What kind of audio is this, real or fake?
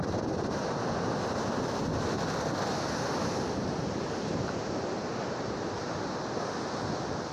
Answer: real